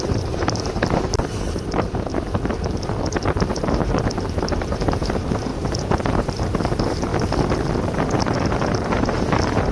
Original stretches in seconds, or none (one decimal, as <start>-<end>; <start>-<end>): 2.1-3.4; 7.1-8.5